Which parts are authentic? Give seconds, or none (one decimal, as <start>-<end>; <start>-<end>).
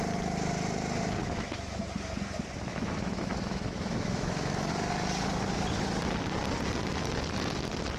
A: 0.0-1.2; 1.8-2.7; 4.7-8.0